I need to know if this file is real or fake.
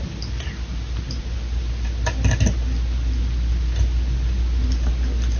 real